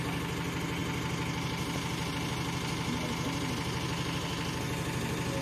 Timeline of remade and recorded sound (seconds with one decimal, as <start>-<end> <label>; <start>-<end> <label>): 0.0-5.4 recorded